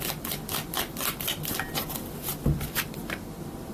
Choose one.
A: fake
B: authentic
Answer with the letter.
A